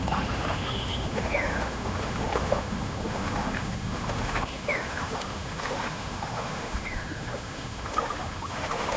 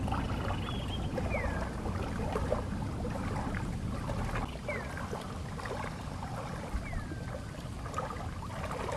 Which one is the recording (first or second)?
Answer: second